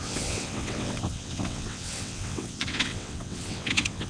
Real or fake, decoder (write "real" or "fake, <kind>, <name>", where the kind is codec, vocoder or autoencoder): fake, vocoder, WaveNeXt